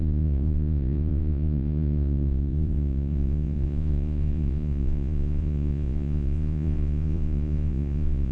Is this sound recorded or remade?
remade